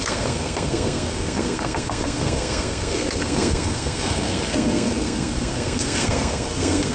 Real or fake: fake